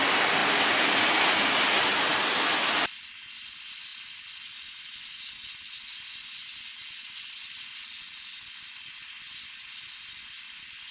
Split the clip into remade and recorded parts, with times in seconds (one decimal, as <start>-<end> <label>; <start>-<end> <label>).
0.0-10.9 recorded